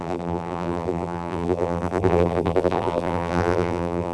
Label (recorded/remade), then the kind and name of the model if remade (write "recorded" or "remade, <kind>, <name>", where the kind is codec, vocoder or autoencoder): remade, vocoder, BigVGAN v2